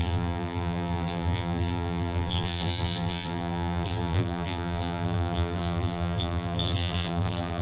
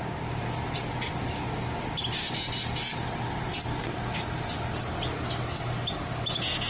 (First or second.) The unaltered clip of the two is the second